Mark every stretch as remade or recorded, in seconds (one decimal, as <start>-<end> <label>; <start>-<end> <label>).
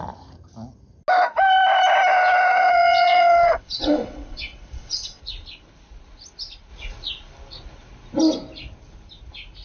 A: 0.0-2.5 recorded; 2.5-5.2 remade; 5.2-9.6 recorded